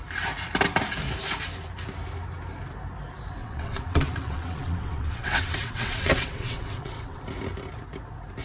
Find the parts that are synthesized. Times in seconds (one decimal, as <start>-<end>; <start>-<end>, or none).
3.4-7.2